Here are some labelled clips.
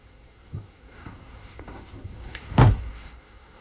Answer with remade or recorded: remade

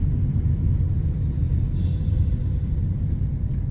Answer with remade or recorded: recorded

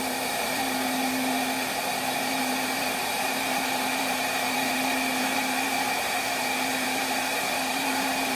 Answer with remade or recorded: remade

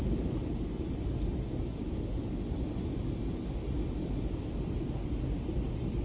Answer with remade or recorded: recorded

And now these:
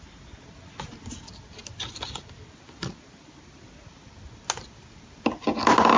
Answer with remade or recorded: recorded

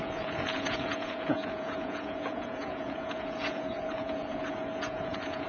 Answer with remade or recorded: remade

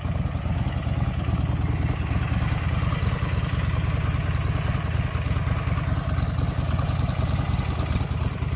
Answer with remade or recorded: recorded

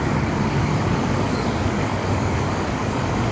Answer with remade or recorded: remade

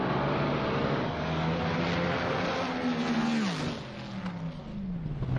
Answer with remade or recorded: recorded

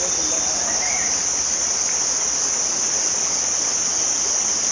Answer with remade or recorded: recorded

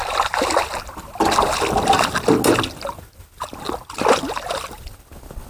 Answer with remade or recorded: recorded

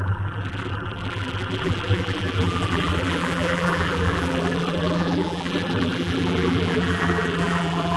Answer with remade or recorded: remade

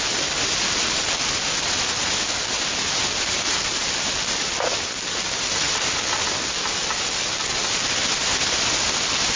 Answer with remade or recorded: recorded